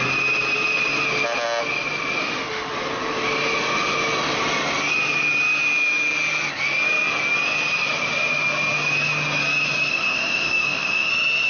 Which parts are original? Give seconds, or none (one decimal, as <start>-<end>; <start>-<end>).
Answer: 0.0-2.2; 2.7-9.9; 11.1-11.5